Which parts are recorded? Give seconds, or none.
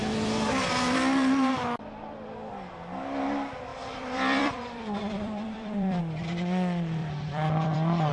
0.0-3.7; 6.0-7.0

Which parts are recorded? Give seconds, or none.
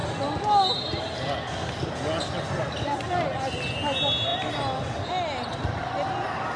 0.0-6.6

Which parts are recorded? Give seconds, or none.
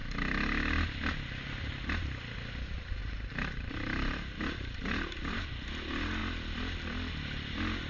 0.0-3.0; 5.5-7.9